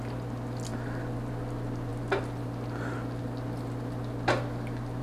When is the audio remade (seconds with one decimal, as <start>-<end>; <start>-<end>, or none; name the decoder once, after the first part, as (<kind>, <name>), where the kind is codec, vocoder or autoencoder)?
none